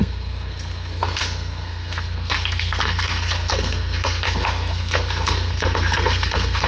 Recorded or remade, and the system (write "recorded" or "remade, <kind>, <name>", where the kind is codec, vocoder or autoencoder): remade, codec, SNAC